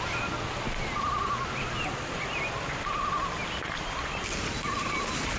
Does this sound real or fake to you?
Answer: real